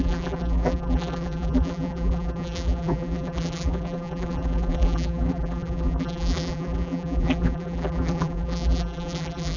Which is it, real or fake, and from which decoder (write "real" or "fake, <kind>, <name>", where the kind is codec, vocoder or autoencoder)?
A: fake, vocoder, BigVGAN v2